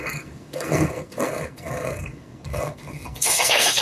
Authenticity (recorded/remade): remade